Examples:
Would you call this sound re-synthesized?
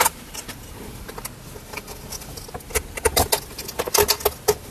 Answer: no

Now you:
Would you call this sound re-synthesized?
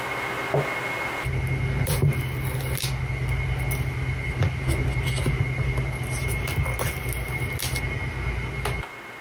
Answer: no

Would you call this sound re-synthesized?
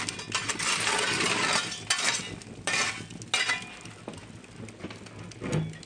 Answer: no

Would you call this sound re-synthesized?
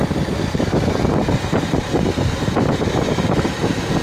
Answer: no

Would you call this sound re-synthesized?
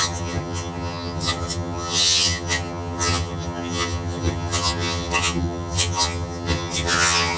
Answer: yes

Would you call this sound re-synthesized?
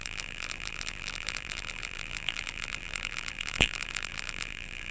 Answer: yes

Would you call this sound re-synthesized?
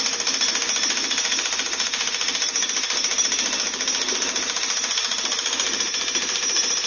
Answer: no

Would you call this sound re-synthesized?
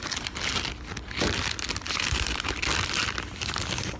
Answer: no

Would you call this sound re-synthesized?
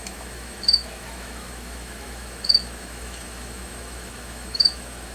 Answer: yes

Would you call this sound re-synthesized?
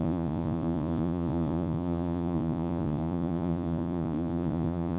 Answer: yes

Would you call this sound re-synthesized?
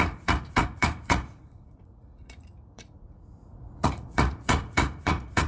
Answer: yes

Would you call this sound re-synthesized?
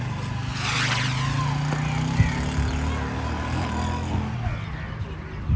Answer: no